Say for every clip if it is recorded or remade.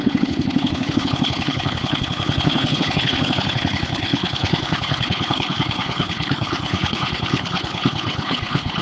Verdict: remade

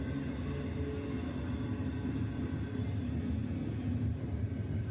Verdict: recorded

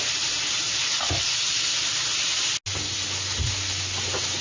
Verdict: recorded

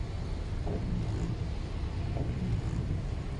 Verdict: recorded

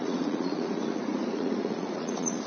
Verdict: remade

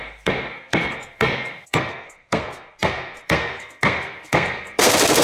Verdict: remade